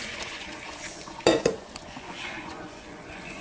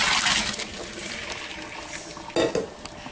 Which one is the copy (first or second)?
first